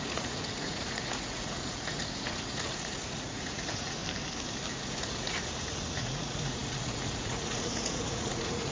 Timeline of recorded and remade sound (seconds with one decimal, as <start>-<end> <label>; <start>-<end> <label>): 0.0-4.0 remade; 4.0-4.7 recorded; 4.7-8.7 remade